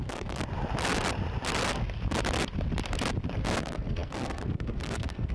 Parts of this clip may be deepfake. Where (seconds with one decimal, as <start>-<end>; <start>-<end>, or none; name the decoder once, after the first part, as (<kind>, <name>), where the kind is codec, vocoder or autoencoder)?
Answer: 0.0-0.4 (codec, SNAC); 3.6-5.3